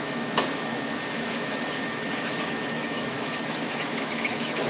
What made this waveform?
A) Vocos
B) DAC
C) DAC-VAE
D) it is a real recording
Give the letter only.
C